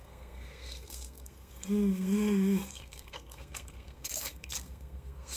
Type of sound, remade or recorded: remade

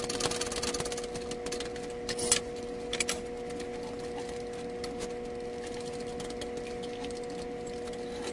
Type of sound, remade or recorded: recorded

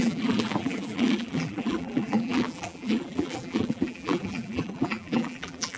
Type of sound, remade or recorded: remade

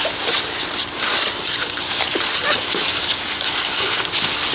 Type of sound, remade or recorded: recorded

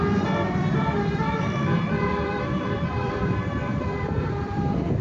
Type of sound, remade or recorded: remade